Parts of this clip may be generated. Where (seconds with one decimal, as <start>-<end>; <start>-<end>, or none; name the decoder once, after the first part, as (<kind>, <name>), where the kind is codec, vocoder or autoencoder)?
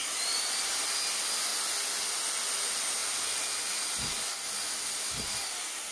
0.0-0.6 (vocoder, BigVGAN v2)